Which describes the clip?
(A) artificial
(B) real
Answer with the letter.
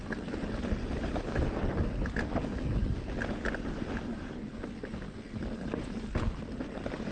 B